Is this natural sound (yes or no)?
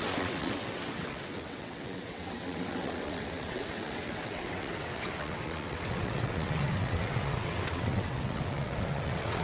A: no